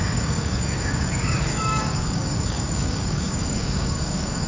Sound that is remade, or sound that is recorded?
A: remade